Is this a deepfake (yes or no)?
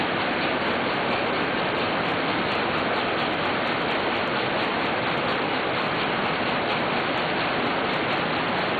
no